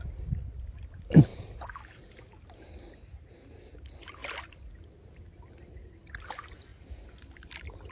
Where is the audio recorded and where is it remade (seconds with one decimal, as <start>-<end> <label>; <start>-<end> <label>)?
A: 0.0-6.7 recorded; 6.7-7.9 remade